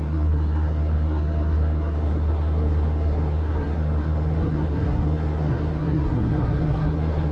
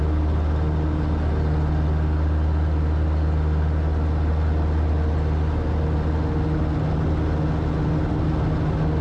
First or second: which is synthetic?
first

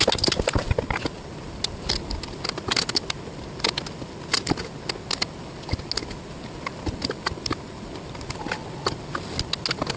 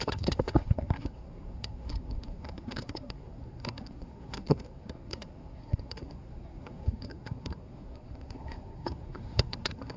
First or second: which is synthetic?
second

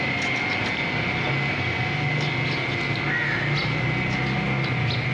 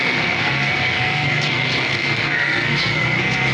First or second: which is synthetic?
second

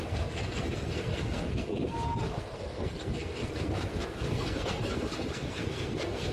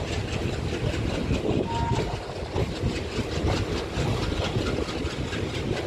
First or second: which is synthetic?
first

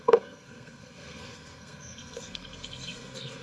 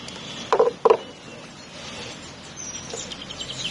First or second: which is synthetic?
first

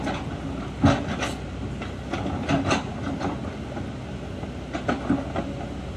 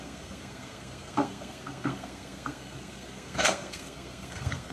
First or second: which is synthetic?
second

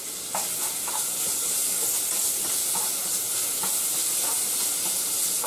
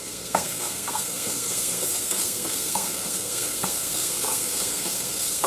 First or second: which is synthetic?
second